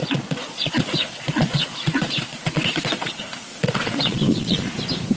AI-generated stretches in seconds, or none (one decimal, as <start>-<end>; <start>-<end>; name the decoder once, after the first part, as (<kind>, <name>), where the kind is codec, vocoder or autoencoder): 0.0-3.1 (vocoder, Vocos); 3.5-4.7